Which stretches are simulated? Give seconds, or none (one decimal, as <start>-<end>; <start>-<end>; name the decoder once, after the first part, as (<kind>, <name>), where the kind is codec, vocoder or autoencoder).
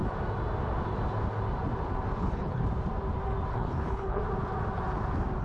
2.2-2.6 (codec, HILCodec); 3.5-4.2